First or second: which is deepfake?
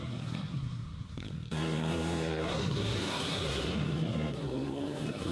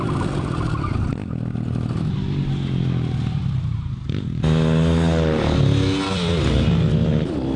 first